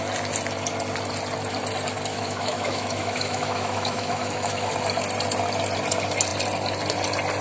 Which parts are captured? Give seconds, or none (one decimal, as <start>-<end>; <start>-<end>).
0.0-2.1; 4.7-7.4